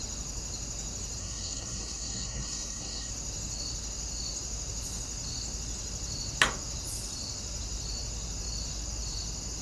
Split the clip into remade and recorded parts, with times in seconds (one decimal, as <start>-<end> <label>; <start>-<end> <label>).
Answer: 0.0-1.2 recorded; 1.2-3.1 remade; 3.1-9.6 recorded